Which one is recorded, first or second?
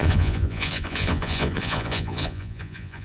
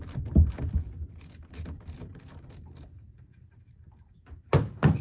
second